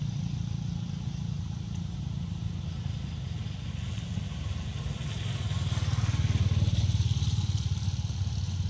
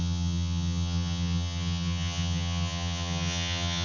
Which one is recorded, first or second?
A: first